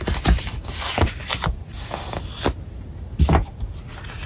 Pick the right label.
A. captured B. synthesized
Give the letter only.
A